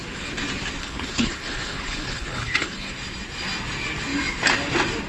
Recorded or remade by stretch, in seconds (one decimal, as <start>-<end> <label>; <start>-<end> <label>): 0.0-0.8 recorded; 0.8-2.9 remade; 2.9-5.1 recorded